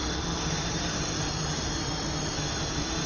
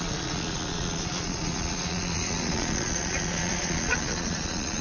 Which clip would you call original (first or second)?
first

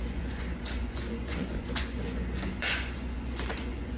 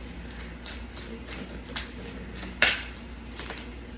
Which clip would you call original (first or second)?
second